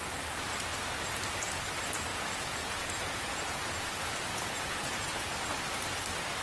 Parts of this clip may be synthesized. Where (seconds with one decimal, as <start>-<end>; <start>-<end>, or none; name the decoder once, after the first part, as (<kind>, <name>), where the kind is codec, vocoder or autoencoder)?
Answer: 2.1-5.3 (vocoder, Vocos)